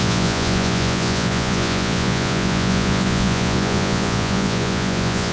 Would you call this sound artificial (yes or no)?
yes